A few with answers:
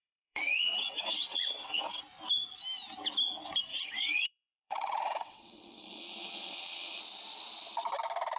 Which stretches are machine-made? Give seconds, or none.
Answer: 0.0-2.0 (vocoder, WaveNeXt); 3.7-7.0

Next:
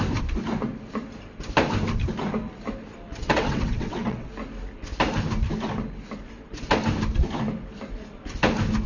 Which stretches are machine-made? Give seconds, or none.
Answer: 3.2-4.3 (vocoder, WaveNeXt)

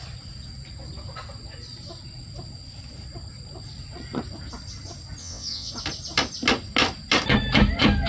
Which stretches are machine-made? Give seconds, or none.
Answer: 5.2-5.7 (vocoder, WaveNeXt)

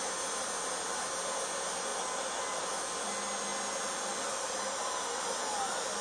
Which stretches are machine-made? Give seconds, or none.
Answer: none

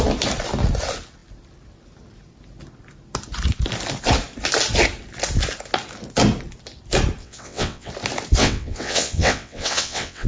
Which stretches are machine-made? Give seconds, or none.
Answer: 7.2-7.9 (vocoder, WaveNeXt); 8.4-10.3